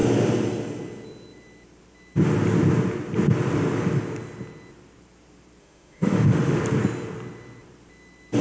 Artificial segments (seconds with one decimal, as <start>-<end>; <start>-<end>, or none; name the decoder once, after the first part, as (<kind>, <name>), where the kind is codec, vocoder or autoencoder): 5.6-6.6 (autoencoder, DAC-VAE)